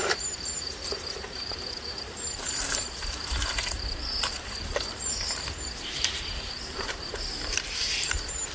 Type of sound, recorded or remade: remade